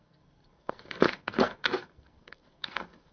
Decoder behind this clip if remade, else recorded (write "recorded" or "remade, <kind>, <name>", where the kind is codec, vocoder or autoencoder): remade, codec, SNAC